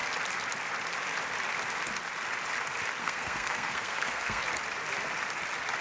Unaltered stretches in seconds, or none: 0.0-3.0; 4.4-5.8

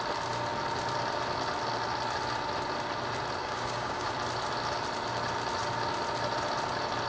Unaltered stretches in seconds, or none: 0.0-3.4; 4.1-7.1

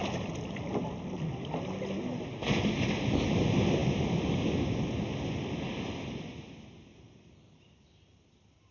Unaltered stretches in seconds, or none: 0.0-8.7